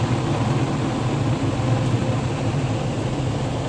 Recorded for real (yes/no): yes